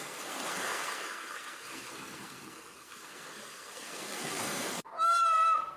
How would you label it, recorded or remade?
remade